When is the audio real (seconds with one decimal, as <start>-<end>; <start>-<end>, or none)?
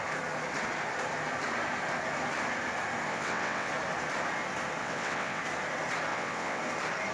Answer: 0.0-3.1; 3.7-4.8; 5.4-6.1; 6.6-7.1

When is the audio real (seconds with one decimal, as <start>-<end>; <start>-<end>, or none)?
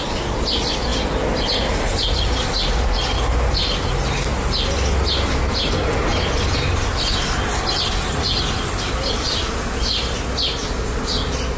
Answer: 0.0-11.6